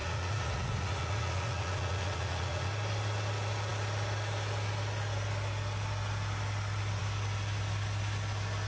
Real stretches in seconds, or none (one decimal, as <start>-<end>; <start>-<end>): 2.7-8.7